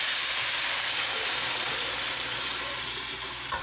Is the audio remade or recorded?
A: recorded